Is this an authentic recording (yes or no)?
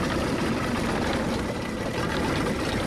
yes